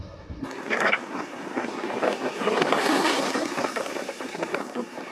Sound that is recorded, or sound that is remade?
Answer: remade